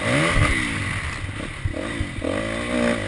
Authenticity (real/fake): real